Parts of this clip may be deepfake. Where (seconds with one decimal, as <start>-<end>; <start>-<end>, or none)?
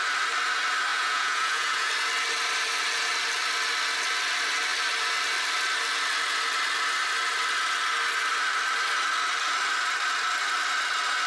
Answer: 0.9-1.9